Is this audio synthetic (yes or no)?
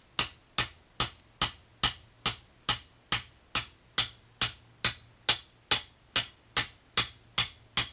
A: no